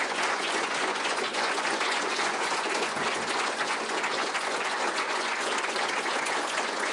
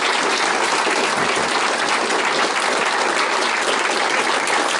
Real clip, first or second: second